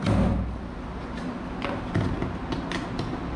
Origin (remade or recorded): recorded